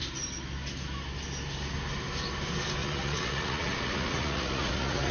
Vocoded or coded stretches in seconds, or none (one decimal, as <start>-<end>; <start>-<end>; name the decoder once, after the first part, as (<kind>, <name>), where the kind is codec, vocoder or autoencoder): 2.8-5.1 (vocoder, Vocos)